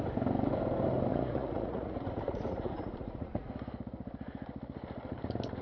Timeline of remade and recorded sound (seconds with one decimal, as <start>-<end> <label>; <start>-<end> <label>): 0.0-1.1 recorded; 1.1-3.5 remade; 3.5-5.6 recorded